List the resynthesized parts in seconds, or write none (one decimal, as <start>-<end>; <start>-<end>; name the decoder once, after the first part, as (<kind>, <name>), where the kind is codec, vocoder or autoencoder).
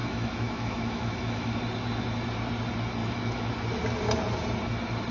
0.0-1.6 (autoencoder, DAC-VAE); 3.0-3.5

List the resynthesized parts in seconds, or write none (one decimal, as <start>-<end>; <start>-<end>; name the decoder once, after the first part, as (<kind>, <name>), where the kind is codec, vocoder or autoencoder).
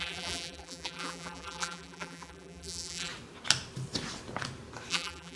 0.0-3.1 (vocoder, BigVGAN v2); 4.9-5.4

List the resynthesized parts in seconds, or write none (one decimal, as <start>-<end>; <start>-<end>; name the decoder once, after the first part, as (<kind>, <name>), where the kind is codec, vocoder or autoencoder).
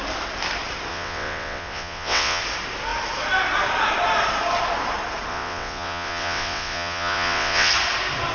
0.9-2.4 (vocoder, WaveNeXt); 5.3-7.7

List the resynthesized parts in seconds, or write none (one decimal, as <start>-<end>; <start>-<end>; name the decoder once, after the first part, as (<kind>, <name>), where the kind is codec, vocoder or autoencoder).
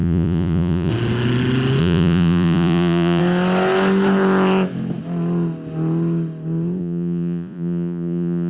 0.0-0.9 (vocoder, Vocos); 1.8-3.2; 6.8-8.5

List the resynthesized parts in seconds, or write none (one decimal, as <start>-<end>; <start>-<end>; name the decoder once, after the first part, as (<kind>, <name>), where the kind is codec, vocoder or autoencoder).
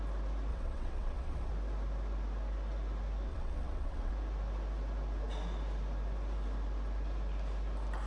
0.5-1.5 (vocoder, WaveNeXt); 3.3-4.1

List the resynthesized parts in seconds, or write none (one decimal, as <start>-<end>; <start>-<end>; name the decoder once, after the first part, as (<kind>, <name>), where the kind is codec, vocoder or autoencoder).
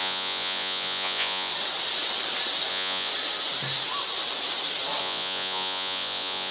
0.0-1.5 (vocoder, Vocos); 2.7-3.1; 5.0-6.5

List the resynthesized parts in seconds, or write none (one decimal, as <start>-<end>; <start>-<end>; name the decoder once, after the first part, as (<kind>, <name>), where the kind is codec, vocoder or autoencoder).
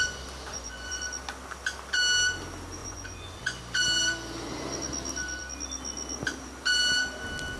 0.5-1.0 (vocoder, Vocos); 2.8-3.6